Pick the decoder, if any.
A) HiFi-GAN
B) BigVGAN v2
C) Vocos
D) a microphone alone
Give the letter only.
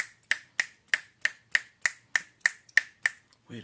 D